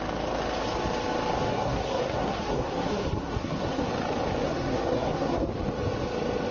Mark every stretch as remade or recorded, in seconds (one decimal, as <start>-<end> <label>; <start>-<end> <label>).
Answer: 0.0-1.5 recorded; 1.5-3.9 remade; 3.9-4.4 recorded; 4.4-5.5 remade; 5.5-6.5 recorded